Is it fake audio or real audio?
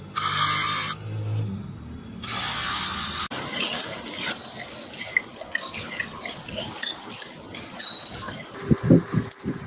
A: real